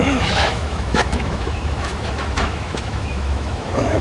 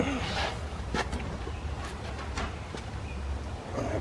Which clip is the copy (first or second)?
first